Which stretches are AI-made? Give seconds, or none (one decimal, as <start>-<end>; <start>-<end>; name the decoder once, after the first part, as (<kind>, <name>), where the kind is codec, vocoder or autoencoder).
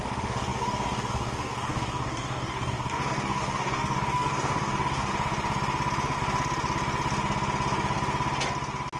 0.0-5.1 (codec, DAC)